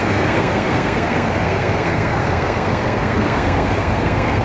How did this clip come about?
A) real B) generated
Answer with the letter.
B